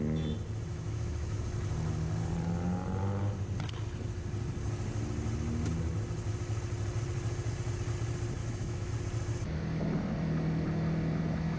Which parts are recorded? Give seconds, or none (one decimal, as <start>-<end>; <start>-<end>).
0.0-0.7; 1.4-8.4; 8.9-11.6